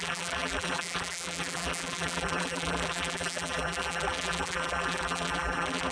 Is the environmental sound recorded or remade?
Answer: remade